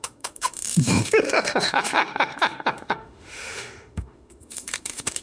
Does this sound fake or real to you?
fake